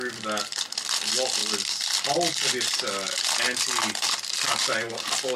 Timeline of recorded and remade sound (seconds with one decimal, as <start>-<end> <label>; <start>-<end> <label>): 0.0-1.4 remade; 1.4-4.5 recorded; 4.5-5.4 remade